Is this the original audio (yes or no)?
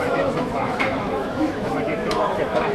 no